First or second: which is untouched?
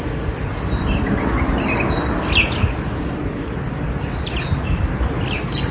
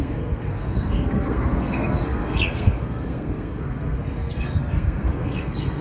first